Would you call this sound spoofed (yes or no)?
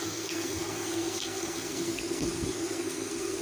yes